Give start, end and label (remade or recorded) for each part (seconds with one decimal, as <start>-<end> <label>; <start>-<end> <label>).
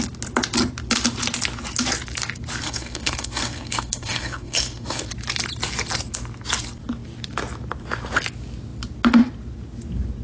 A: 0.0-2.6 recorded; 2.6-5.1 remade; 5.1-10.2 recorded